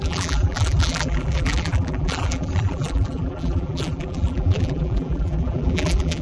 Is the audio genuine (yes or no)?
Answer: no